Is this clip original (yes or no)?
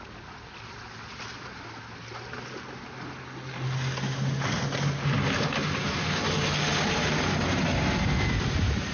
yes